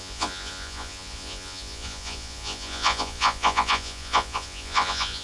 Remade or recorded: remade